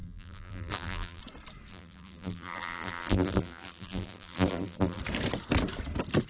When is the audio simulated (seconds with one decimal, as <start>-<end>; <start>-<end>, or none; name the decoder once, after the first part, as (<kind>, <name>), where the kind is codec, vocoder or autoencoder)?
0.0-1.2 (vocoder, BigVGAN v2); 1.7-5.0